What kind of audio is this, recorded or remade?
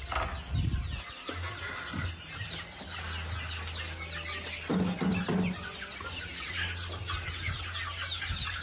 recorded